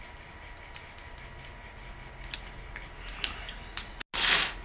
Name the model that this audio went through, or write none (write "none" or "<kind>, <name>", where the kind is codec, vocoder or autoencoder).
none